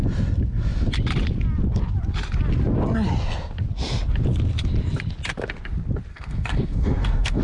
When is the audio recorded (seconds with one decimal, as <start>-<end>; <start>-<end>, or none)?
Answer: 0.0-6.1